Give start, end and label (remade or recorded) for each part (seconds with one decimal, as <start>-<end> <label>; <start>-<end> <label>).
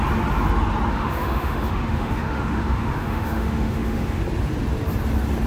0.0-0.9 recorded; 0.9-4.2 remade; 4.2-5.5 recorded